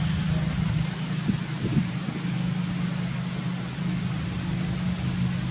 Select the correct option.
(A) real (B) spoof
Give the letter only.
A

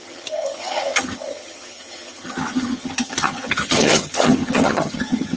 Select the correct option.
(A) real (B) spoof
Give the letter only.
B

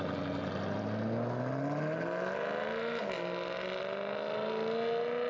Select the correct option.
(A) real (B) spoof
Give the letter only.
A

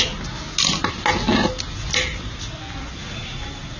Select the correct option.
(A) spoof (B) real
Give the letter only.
B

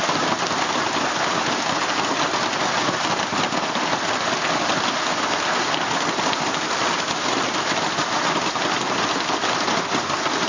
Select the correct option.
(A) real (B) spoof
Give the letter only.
A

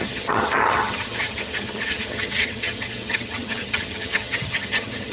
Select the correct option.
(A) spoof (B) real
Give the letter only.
A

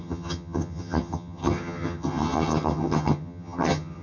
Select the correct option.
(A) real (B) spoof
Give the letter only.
B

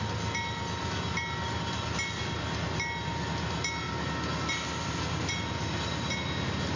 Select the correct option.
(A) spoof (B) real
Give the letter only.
B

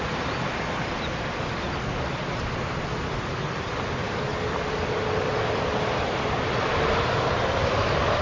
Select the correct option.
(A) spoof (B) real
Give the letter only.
B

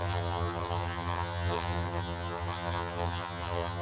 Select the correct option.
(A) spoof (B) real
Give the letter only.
A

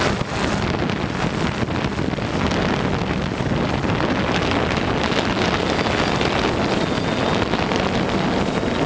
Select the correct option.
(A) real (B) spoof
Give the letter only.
A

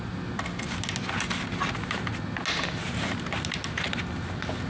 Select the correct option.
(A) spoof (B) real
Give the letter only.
B